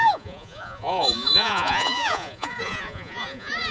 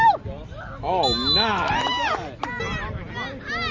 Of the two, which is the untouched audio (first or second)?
second